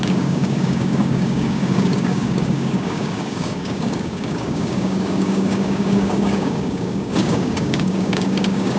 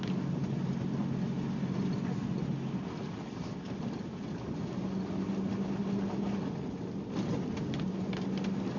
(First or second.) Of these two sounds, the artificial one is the first